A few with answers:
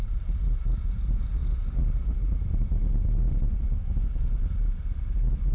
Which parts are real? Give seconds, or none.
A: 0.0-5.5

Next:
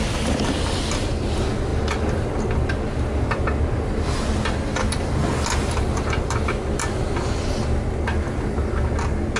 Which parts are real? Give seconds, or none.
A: 0.0-9.4

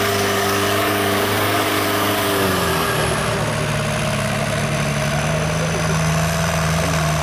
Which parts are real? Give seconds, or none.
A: 2.7-7.2

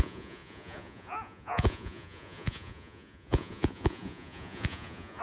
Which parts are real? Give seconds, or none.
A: none

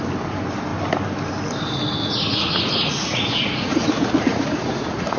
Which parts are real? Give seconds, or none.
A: 0.0-2.0